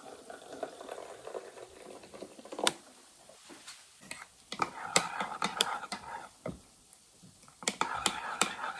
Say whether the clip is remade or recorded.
remade